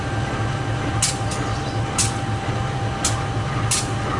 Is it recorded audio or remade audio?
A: recorded